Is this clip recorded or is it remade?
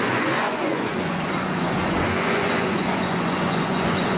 remade